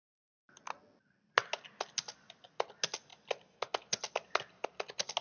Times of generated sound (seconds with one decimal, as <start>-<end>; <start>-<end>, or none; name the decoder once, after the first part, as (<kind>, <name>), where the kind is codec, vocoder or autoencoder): none